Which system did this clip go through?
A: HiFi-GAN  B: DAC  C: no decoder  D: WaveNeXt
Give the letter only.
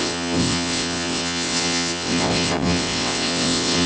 D